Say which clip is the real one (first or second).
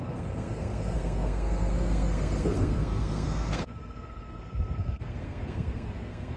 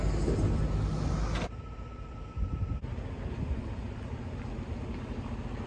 second